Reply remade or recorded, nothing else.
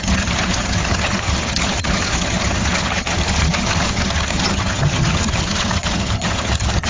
remade